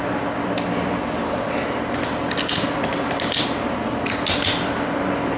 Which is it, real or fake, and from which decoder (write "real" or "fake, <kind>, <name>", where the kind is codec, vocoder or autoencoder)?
real